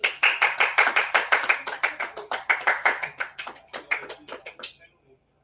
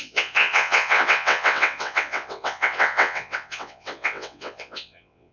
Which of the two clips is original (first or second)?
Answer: first